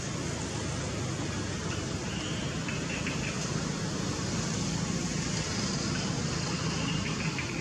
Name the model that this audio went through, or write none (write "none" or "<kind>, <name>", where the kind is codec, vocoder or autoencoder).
none